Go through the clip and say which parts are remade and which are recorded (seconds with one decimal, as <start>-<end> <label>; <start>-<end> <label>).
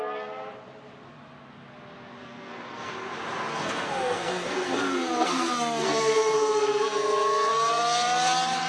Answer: 0.0-2.2 recorded; 2.2-2.9 remade; 2.9-3.5 recorded; 3.5-7.7 remade; 7.7-8.7 recorded